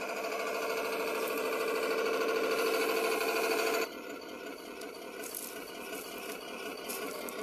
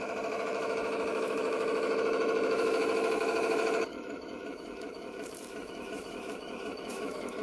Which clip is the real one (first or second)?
first